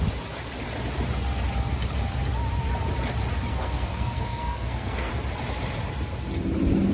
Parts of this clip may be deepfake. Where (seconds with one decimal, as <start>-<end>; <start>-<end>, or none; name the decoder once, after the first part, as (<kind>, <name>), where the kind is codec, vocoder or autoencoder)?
3.5-5.1 (codec, SNAC)